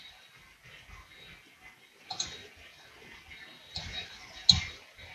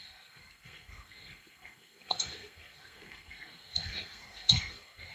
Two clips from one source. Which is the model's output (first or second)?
second